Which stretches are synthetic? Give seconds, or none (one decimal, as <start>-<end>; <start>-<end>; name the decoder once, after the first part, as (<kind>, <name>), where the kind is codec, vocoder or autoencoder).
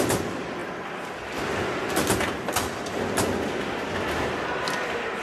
none